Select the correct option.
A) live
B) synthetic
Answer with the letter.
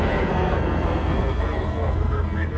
B